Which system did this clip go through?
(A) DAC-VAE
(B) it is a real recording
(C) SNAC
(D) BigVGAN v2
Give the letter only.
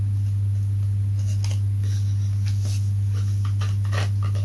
B